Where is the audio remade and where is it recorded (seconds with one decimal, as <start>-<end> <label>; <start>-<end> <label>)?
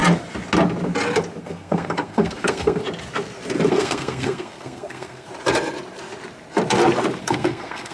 0.0-1.4 recorded; 1.4-2.8 remade; 2.8-3.7 recorded; 3.7-5.3 remade; 5.3-7.2 recorded; 7.2-7.9 remade